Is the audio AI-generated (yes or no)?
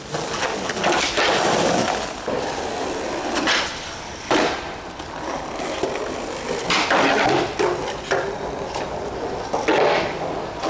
no